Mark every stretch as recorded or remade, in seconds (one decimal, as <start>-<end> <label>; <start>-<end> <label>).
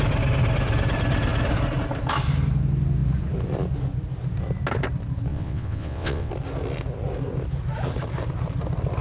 0.0-5.3 recorded; 5.3-6.3 remade; 6.3-9.0 recorded